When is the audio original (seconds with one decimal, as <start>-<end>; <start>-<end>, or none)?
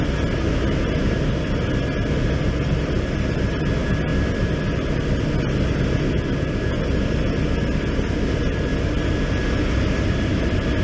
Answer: 0.0-10.8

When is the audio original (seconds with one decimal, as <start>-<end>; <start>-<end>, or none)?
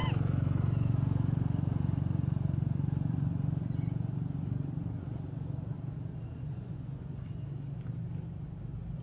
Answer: 0.0-6.3; 7.2-9.0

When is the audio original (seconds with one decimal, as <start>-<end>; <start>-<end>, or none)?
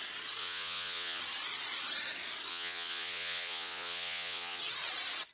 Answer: 0.0-0.4; 1.2-2.5; 4.6-5.3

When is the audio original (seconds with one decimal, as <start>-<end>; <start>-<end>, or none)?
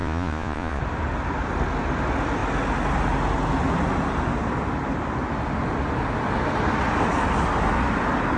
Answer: 0.8-8.4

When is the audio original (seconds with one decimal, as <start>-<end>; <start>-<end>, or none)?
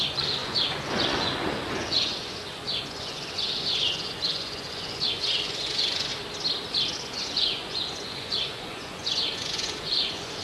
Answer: 6.1-7.0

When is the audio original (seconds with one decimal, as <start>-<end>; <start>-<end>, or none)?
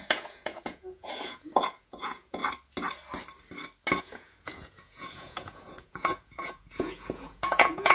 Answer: 2.4-4.0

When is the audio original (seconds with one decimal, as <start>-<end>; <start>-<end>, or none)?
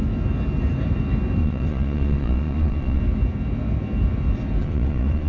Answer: 0.0-1.4; 3.0-4.6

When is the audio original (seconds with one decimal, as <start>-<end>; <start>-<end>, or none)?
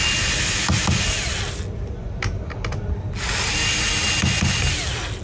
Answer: 0.0-5.2